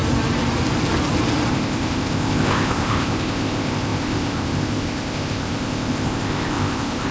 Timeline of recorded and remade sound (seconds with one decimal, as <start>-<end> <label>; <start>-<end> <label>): 0.0-1.5 recorded; 1.5-7.1 remade